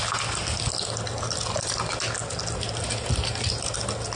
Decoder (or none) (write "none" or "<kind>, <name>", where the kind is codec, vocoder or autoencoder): none